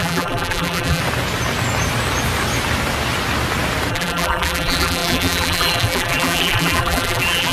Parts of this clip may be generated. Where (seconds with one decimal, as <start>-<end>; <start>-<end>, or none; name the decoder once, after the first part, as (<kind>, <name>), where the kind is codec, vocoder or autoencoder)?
0.0-1.0 (vocoder, BigVGAN v2); 3.9-7.5